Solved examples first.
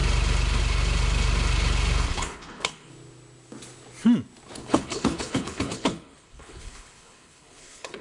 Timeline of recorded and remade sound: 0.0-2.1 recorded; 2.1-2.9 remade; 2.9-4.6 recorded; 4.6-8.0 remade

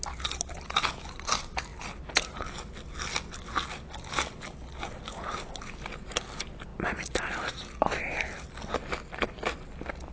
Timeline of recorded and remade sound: 0.0-10.1 recorded

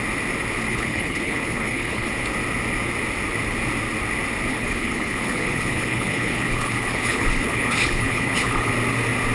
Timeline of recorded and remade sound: 0.0-0.7 recorded; 0.7-2.1 remade; 2.1-4.5 recorded; 4.5-8.7 remade; 8.7-9.3 recorded

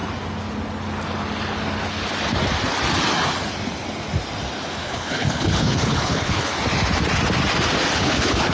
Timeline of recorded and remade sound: 0.0-4.7 recorded; 4.7-6.5 remade; 6.5-8.0 recorded; 8.0-8.5 remade